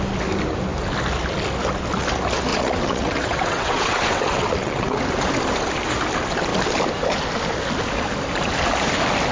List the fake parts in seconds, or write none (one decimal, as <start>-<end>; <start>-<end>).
2.5-5.0